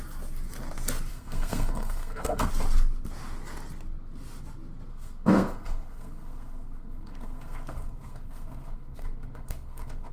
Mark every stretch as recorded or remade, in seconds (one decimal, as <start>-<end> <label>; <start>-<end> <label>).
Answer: 0.0-1.1 recorded; 1.1-2.5 remade; 2.5-4.9 recorded; 4.9-10.1 remade